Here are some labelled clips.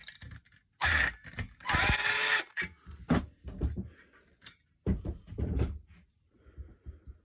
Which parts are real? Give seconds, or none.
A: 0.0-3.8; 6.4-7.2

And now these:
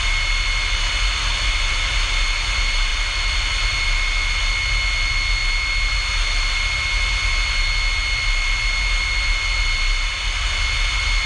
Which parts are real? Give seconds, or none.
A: 0.0-11.3

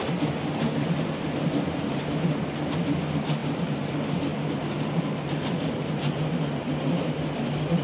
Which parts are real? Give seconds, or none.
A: 0.0-7.8

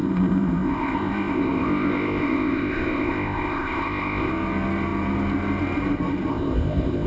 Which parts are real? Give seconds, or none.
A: 4.3-6.3

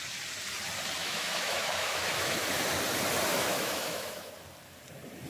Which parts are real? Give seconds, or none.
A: 0.0-1.0; 2.4-3.3; 4.3-5.3

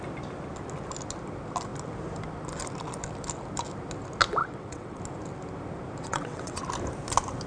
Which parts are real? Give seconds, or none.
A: 0.0-4.4; 5.0-6.0; 6.6-7.5

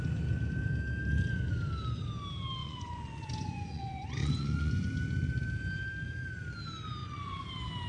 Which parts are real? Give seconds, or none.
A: 0.0-2.6; 4.7-7.0; 7.5-7.9

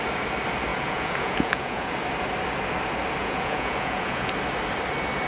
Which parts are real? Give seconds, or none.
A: 0.0-0.7; 1.9-3.2; 4.3-5.3